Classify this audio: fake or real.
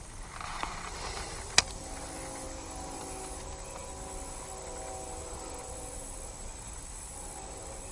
real